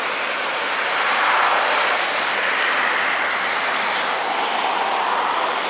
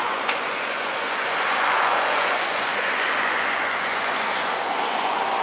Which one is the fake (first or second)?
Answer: second